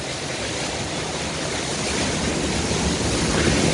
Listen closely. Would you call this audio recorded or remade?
recorded